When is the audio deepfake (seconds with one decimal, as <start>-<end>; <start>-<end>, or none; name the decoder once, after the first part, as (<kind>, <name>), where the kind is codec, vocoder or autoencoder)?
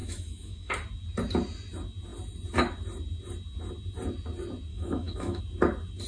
0.0-0.7 (autoencoder, DAC-VAE); 4.7-5.4